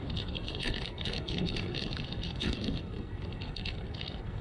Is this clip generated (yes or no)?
yes